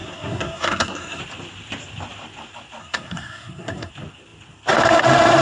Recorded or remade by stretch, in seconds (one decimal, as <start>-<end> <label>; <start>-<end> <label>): 0.0-1.2 remade; 1.2-2.8 recorded; 2.8-3.9 remade; 3.9-5.4 recorded